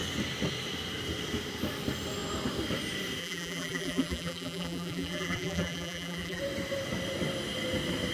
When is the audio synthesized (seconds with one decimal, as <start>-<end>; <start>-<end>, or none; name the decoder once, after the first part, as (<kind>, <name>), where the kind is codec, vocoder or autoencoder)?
3.2-6.4 (vocoder, BigVGAN v2)